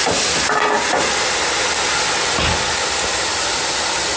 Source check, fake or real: real